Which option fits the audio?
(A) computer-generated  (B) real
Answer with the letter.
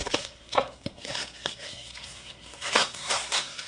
A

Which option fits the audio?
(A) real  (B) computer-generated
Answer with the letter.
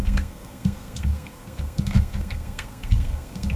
B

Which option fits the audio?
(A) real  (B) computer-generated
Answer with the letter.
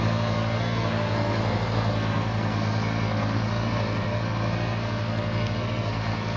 B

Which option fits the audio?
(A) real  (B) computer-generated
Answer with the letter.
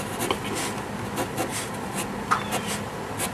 A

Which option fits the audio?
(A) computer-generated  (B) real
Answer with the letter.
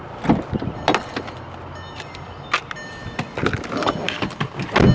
B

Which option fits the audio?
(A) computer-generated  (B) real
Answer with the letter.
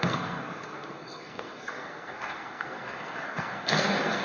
A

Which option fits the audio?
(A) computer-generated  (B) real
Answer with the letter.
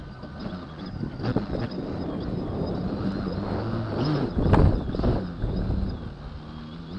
B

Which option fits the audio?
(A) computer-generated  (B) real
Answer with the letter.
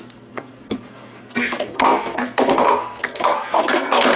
A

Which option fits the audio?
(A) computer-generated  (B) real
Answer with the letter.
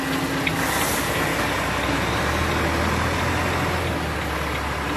B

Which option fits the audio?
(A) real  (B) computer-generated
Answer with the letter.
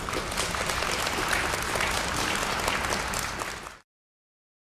A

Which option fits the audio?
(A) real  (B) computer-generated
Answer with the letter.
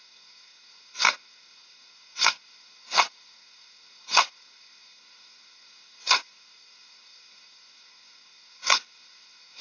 B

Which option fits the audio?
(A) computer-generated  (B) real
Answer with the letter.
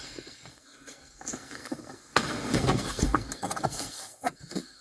A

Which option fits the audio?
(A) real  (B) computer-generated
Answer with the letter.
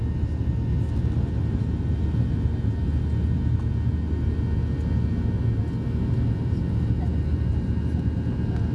A